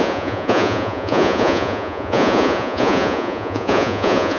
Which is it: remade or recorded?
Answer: remade